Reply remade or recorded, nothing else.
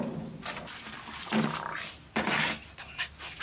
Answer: recorded